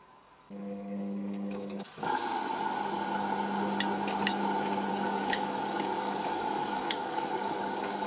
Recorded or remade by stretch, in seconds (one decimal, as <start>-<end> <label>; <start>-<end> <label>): 0.0-2.2 remade; 2.2-4.9 recorded; 4.9-8.1 remade